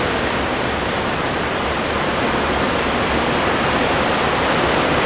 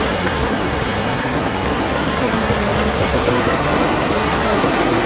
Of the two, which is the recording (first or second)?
first